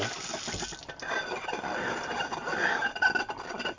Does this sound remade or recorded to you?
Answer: recorded